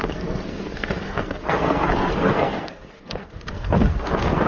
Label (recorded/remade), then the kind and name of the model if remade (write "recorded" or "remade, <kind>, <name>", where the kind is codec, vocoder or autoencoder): remade, codec, SNAC